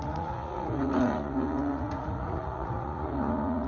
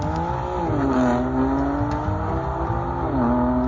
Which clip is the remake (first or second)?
first